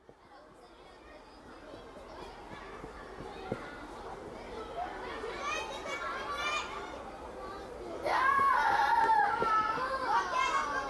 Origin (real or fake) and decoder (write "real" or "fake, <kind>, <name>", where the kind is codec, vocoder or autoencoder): real